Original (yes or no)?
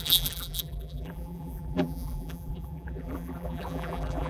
no